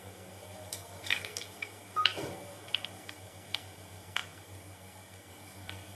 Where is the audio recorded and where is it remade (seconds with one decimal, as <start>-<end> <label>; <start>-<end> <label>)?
0.0-6.0 remade